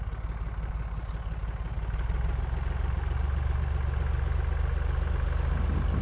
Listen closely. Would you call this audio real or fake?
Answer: real